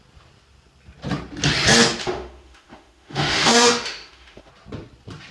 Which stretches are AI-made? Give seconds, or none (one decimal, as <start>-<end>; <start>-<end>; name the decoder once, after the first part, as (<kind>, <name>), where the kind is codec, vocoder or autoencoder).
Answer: 2.0-4.5 (autoencoder, DAC-VAE)